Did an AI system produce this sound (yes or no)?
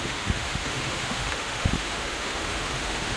yes